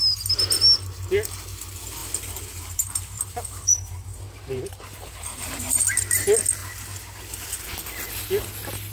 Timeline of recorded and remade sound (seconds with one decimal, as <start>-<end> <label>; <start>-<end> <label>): 0.0-2.0 recorded; 2.0-5.8 remade; 5.8-8.9 recorded